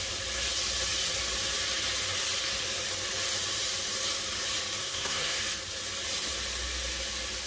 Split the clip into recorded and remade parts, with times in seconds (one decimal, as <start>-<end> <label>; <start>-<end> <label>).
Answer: 0.0-4.8 recorded; 4.8-5.4 remade; 5.4-7.5 recorded